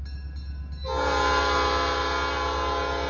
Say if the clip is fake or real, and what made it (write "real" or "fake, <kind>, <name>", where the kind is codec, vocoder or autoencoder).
real